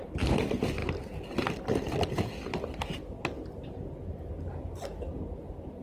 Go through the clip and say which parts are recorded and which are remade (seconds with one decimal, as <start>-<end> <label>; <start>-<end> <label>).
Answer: 0.0-5.8 recorded